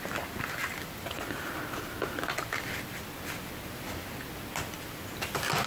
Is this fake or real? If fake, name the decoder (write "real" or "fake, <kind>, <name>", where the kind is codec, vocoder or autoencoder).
real